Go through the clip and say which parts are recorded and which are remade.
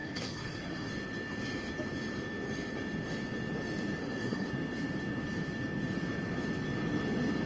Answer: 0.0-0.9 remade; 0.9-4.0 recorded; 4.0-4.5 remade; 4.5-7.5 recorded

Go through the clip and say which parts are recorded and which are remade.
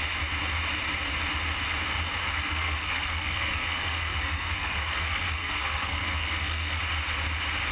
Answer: 0.0-2.2 recorded; 2.2-6.8 remade; 6.8-7.7 recorded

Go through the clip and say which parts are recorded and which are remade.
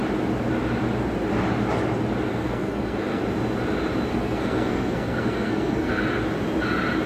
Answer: 0.0-2.3 recorded; 2.3-3.2 remade; 3.2-4.1 recorded; 4.1-6.0 remade; 6.0-7.1 recorded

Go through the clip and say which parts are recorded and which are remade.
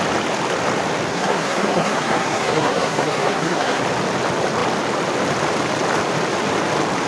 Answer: 0.0-1.1 recorded; 1.1-3.8 remade; 3.8-7.1 recorded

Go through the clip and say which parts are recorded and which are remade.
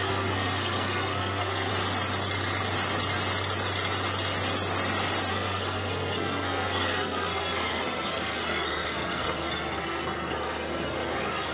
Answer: 0.0-1.7 remade; 1.7-5.3 recorded; 5.3-11.5 remade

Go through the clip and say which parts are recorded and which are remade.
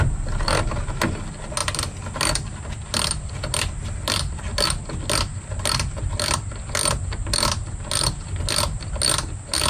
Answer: 0.0-9.7 recorded